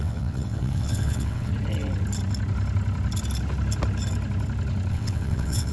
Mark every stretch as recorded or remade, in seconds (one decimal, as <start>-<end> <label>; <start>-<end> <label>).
0.0-1.5 remade; 1.5-4.9 recorded; 4.9-5.7 remade

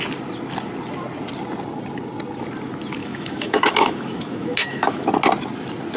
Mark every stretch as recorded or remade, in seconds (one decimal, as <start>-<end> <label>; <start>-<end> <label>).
0.0-3.0 recorded; 3.0-5.1 remade; 5.1-6.0 recorded

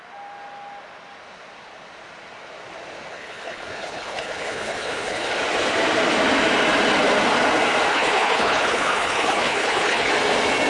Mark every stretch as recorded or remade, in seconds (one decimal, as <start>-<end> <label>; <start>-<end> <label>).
0.0-3.1 recorded; 3.1-5.3 remade; 5.3-7.9 recorded; 7.9-10.1 remade; 10.1-10.7 recorded

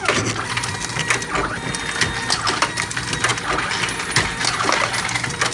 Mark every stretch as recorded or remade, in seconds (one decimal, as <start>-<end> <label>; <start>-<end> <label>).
0.0-5.5 recorded

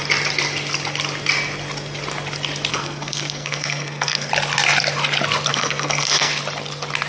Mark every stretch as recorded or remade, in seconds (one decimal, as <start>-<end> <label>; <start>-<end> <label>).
0.0-2.7 recorded; 2.7-4.3 remade; 4.3-5.5 recorded; 5.5-6.3 remade; 6.3-7.1 recorded

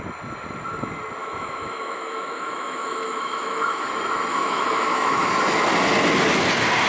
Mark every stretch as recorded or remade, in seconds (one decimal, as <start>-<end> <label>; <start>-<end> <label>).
0.0-1.2 recorded; 1.2-3.9 remade; 3.9-4.3 recorded; 4.3-5.3 remade; 5.3-6.9 recorded

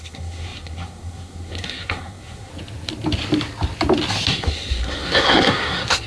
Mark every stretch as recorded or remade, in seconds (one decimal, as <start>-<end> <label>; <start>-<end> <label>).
0.0-2.5 remade; 2.5-4.3 recorded; 4.3-6.1 remade

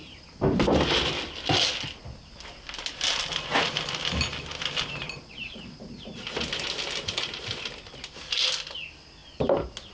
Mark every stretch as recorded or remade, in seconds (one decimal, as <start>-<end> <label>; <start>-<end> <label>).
0.0-9.9 recorded